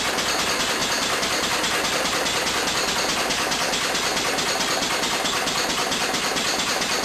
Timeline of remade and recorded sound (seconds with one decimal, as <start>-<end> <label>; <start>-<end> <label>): 0.0-7.0 recorded